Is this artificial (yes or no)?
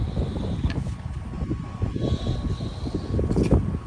no